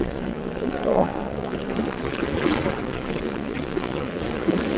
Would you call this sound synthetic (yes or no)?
yes